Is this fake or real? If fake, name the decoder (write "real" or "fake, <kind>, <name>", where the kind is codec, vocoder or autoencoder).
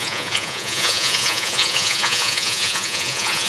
fake, vocoder, Vocos